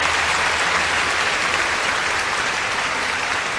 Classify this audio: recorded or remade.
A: remade